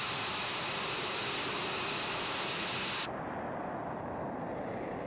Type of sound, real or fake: real